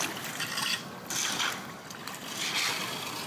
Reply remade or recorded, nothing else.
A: recorded